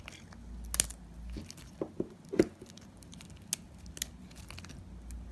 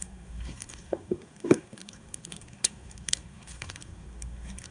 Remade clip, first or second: second